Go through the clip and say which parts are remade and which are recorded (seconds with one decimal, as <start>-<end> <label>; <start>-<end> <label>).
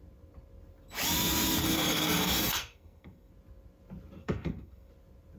0.0-1.6 recorded; 1.6-3.3 remade; 3.3-4.2 recorded; 4.2-4.9 remade; 4.9-5.4 recorded